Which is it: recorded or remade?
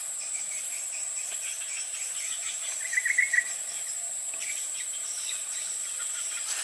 remade